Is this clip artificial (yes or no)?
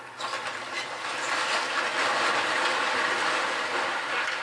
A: yes